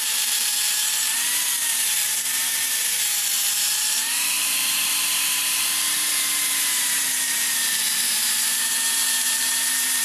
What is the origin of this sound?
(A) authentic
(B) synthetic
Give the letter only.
B